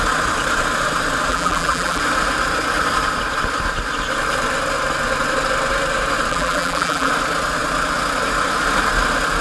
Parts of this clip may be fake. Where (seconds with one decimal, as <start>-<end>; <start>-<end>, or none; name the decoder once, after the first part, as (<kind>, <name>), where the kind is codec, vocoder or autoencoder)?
1.3-2.0 (vocoder, BigVGAN v2); 6.3-7.1